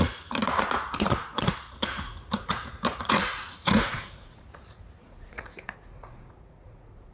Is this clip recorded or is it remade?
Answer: remade